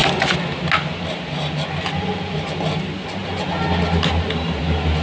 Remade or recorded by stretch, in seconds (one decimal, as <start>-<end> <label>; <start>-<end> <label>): 0.0-5.0 recorded